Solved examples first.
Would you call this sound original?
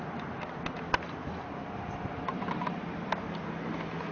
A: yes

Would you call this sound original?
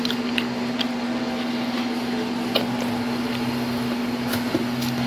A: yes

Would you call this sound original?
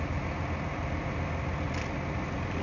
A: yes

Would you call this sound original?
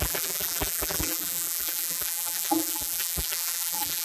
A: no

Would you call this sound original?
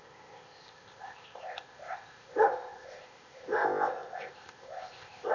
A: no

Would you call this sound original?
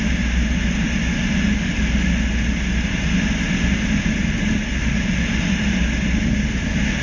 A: yes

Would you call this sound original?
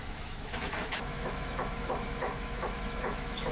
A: no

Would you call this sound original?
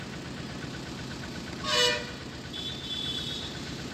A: yes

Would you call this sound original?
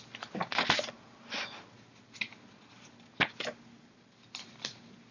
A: yes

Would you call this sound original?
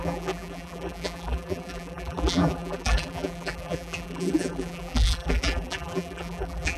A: no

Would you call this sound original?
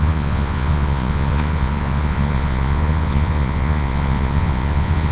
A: no